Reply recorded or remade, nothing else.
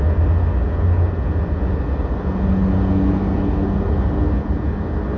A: recorded